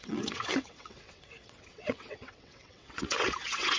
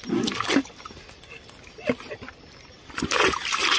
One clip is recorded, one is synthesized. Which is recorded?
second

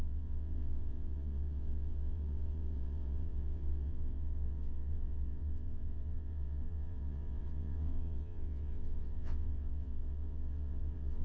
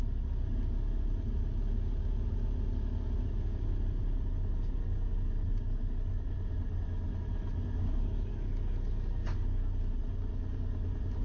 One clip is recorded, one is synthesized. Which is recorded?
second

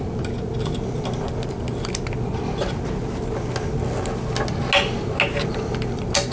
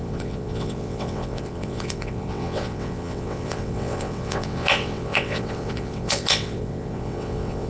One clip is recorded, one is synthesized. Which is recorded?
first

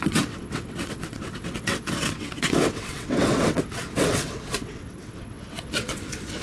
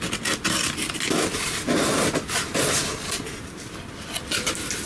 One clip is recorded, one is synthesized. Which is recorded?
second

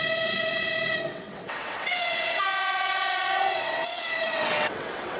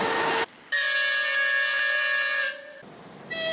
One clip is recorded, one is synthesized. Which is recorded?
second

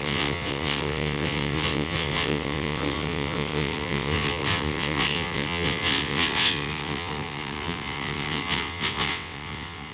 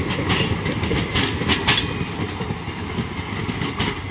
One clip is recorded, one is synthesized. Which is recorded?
second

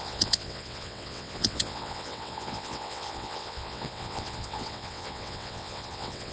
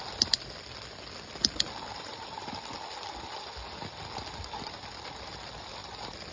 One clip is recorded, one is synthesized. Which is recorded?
second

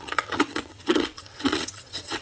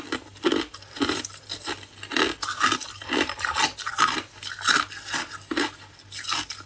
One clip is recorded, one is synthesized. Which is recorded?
second